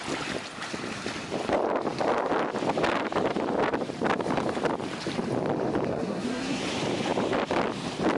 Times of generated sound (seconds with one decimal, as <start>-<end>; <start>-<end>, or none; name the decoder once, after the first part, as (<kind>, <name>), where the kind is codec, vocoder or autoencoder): 5.9-6.6 (codec, SNAC)